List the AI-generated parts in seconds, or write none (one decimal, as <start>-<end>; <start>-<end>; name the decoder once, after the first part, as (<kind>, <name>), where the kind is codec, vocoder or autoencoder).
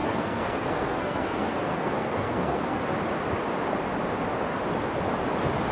0.0-2.8 (codec, SNAC)